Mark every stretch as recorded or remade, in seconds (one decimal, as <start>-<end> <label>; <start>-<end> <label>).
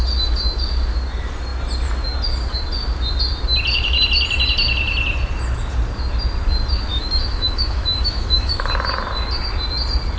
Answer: 0.0-6.9 recorded; 6.9-8.7 remade; 8.7-10.2 recorded